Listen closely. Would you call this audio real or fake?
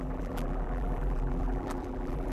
fake